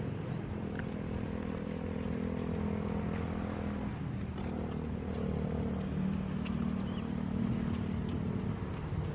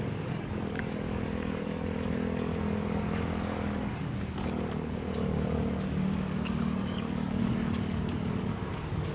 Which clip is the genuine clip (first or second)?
first